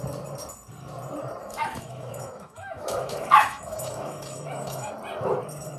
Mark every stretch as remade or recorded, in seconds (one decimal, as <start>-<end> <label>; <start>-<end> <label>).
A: 0.0-1.4 recorded; 1.4-4.9 remade; 4.9-5.8 recorded